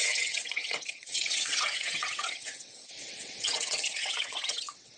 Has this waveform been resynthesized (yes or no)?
yes